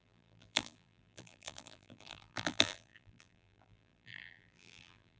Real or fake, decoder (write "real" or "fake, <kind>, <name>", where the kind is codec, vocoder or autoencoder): fake, vocoder, BigVGAN v2